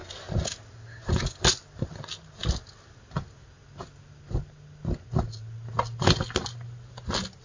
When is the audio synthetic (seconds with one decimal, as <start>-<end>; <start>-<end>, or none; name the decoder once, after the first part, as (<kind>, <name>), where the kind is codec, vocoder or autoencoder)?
none